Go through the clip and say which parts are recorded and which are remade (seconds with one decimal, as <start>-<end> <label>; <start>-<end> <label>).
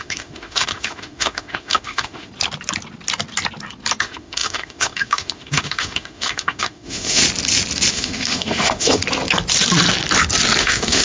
0.0-2.3 remade; 2.3-4.0 recorded; 4.0-7.2 remade; 7.2-7.9 recorded; 7.9-9.0 remade; 9.0-10.6 recorded; 10.6-11.0 remade